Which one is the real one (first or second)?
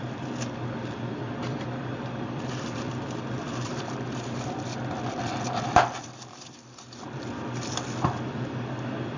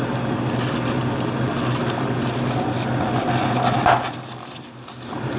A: second